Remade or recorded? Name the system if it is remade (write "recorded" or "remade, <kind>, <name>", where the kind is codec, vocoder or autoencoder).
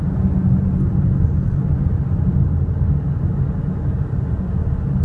recorded